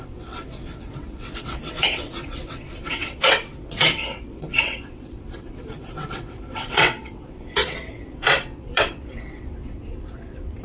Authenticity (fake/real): fake